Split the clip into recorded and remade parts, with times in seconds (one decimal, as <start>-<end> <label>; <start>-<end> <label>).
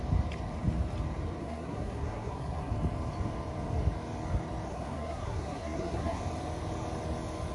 0.0-1.4 recorded; 1.4-2.7 remade; 2.7-4.7 recorded; 4.7-6.2 remade; 6.2-7.5 recorded